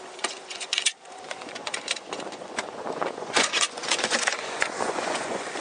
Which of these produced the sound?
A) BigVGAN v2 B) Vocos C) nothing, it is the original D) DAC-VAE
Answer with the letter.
B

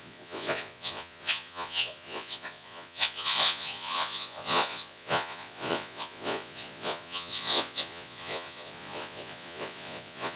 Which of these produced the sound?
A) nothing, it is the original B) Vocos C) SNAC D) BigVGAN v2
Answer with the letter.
B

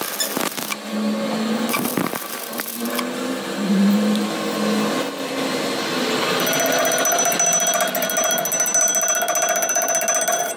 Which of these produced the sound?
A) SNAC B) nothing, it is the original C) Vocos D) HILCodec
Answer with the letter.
B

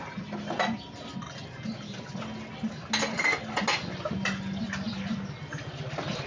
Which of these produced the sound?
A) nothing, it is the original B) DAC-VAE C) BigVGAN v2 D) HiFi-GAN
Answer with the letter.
A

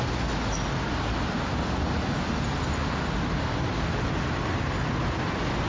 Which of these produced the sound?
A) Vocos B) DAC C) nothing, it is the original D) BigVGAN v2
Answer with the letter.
C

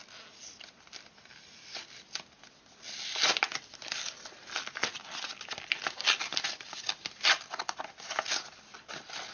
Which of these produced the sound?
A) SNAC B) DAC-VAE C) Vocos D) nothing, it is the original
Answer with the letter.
D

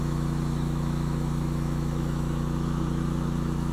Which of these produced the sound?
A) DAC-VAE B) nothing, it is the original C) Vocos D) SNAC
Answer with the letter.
A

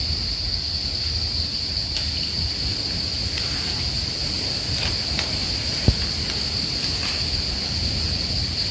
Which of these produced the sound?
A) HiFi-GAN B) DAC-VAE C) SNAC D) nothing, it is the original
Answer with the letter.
D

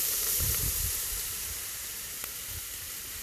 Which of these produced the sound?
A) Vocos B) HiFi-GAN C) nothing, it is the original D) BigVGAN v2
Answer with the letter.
D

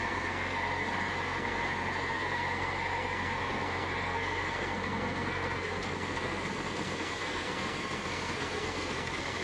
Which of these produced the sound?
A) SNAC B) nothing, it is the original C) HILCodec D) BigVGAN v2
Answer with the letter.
A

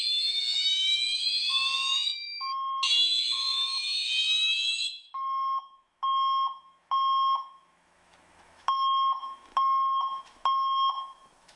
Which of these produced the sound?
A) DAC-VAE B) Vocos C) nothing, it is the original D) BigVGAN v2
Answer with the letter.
A